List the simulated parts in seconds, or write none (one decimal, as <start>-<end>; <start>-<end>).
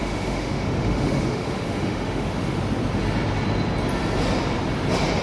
0.0-2.6